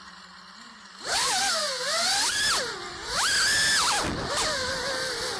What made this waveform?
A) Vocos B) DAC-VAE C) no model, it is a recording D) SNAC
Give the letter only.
C